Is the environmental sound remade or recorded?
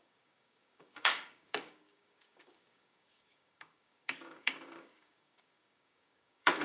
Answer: remade